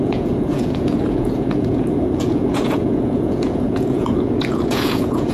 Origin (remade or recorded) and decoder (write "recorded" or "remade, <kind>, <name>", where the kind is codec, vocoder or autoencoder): remade, vocoder, Vocos